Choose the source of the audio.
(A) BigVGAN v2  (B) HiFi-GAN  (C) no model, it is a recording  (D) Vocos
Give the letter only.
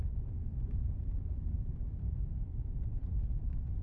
A